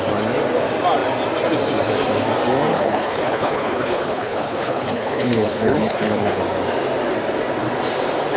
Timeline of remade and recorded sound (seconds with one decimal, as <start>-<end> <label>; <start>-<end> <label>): 0.0-2.7 recorded; 2.7-6.4 remade; 6.4-8.4 recorded